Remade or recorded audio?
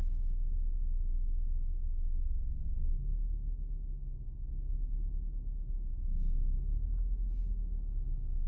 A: recorded